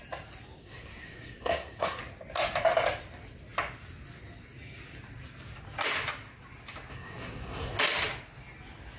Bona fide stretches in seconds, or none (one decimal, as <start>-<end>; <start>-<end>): 0.0-0.6; 2.0-6.9; 7.8-9.0